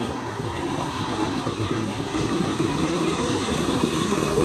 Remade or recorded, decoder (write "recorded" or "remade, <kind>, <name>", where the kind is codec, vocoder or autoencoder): remade, codec, SNAC